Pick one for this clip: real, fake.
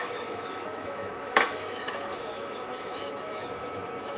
fake